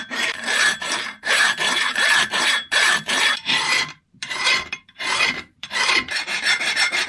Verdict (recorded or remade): remade